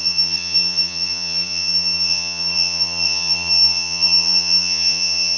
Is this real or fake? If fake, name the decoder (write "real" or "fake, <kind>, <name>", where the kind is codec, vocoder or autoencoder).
fake, vocoder, Vocos